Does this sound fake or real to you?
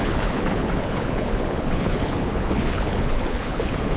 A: fake